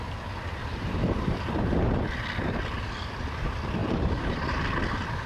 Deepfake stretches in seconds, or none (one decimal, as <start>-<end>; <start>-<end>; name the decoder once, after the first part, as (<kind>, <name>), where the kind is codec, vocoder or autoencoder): 0.6-2.0 (vocoder, BigVGAN v2); 3.8-4.6